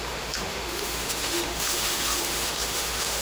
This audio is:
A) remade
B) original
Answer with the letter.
A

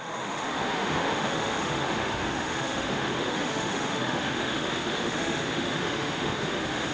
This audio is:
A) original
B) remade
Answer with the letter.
B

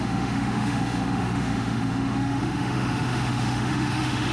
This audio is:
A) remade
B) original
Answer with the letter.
A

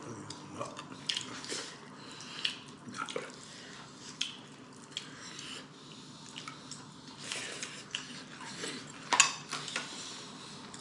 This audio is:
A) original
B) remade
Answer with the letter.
A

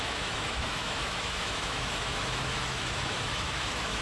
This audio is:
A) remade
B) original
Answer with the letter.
A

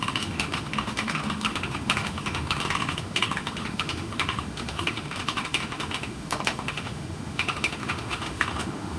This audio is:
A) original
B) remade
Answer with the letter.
B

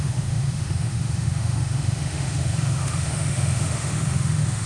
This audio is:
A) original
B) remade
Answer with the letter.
B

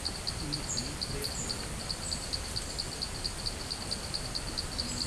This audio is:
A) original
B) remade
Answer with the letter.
A